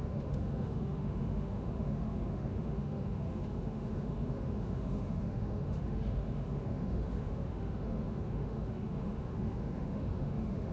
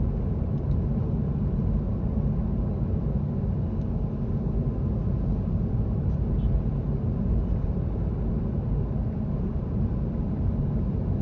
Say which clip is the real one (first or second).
second